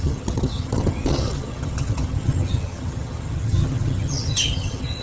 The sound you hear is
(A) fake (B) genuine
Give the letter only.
A